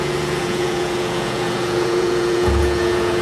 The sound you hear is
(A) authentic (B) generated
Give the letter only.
B